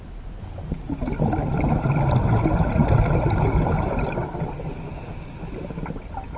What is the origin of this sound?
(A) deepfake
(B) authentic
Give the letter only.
B